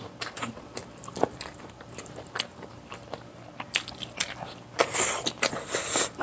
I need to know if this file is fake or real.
fake